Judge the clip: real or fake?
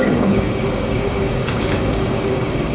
fake